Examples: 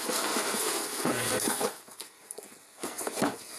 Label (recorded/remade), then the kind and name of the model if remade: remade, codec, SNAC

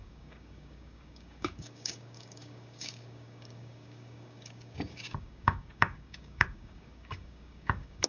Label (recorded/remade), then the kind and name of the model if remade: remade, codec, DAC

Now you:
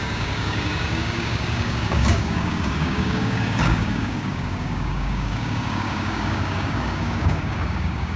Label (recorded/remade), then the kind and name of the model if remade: remade, codec, DAC